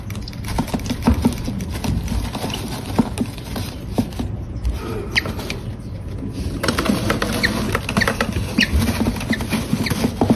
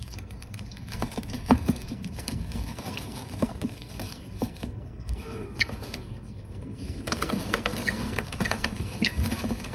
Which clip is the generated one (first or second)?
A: second